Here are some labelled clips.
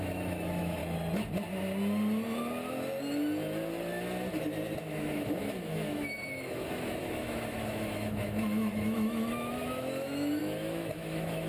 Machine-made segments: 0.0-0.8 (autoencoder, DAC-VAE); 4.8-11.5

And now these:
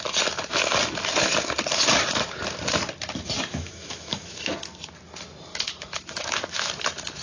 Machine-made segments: 3.5-4.5 (autoencoder, DAC-VAE); 5.5-6.7

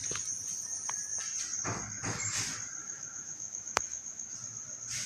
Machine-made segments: 2.8-4.3 (autoencoder, DAC-VAE)

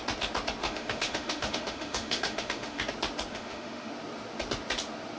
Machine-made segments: 0.6-2.8 (autoencoder, DAC-VAE); 3.3-3.9

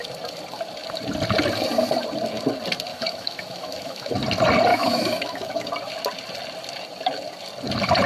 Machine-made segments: 2.9-4.1 (autoencoder, DAC-VAE); 4.7-5.7

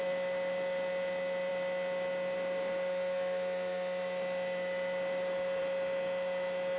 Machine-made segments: none

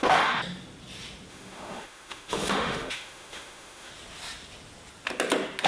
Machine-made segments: 0.0-0.4 (autoencoder, DAC-VAE); 1.3-3.9

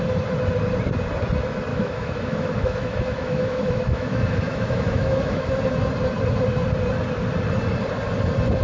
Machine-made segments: 1.7-5.6 (autoencoder, DAC-VAE)